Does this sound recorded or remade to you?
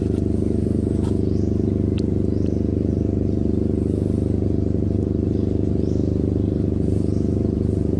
recorded